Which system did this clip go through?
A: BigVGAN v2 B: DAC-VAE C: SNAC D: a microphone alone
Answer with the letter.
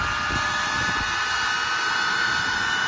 D